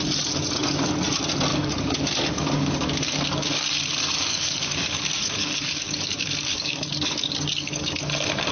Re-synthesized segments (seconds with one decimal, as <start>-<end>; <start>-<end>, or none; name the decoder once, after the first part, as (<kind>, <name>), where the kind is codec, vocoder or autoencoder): 1.5-3.7 (codec, DAC); 4.3-8.0

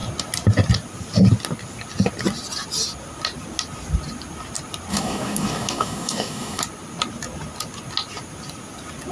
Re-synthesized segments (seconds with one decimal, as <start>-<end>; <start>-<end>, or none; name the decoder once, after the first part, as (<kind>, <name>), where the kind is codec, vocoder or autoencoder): 4.9-6.6 (codec, DAC)

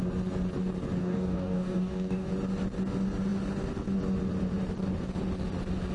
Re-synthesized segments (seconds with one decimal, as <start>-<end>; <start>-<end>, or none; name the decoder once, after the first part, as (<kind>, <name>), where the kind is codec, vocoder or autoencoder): 1.0-2.3 (codec, DAC)

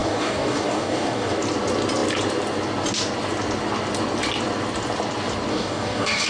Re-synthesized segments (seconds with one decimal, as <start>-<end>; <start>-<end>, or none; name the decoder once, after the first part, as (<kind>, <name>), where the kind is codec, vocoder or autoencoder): 0.0-1.4 (codec, DAC); 5.5-6.3

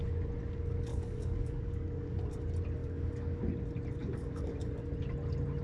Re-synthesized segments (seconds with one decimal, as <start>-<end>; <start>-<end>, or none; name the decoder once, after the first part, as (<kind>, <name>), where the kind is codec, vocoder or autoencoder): 0.9-2.2 (codec, DAC); 2.8-3.4; 4.0-4.5